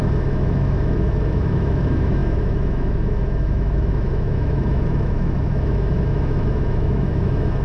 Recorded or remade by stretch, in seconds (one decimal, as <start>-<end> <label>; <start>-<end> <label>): 0.0-7.6 remade